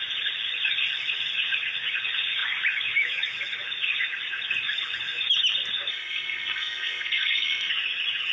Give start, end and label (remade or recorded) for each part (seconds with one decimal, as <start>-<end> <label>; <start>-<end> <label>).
0.0-5.9 recorded; 5.9-7.7 remade; 7.7-8.3 recorded